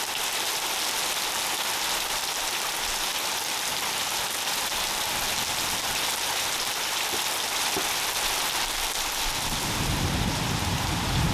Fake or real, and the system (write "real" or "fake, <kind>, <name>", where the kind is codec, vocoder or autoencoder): real